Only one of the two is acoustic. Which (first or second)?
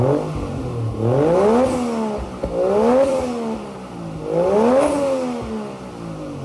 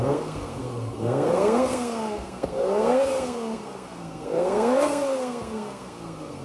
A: first